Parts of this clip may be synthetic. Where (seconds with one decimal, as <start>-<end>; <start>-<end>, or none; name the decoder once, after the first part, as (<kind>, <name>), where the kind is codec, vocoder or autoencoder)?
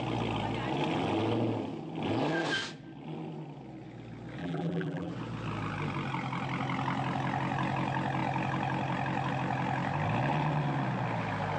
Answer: 4.4-5.1 (vocoder, BigVGAN v2)